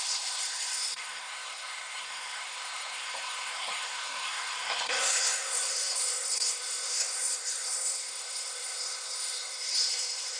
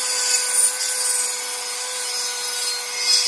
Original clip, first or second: second